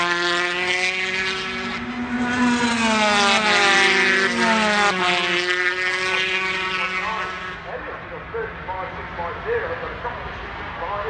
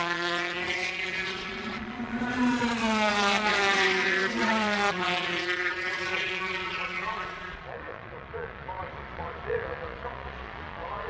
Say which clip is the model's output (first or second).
second